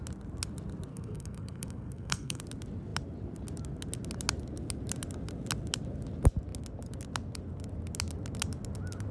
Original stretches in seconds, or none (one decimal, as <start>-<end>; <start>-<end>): 0.0-0.9; 2.4-9.1